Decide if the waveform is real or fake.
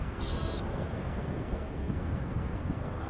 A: fake